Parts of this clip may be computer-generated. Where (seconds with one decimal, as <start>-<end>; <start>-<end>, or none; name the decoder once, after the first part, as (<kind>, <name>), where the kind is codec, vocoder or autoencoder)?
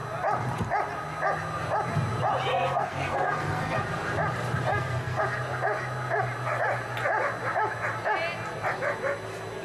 2.5-3.8 (codec, SNAC); 4.7-5.2